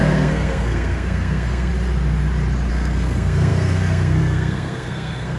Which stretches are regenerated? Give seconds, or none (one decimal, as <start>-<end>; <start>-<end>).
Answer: 0.0-1.7; 2.7-5.4